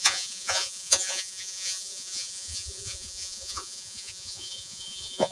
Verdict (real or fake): fake